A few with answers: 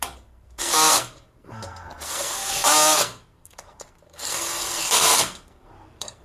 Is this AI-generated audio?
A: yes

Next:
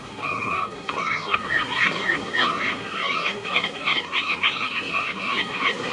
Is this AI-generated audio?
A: yes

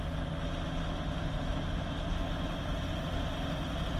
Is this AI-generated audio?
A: no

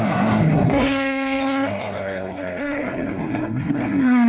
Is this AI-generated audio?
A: yes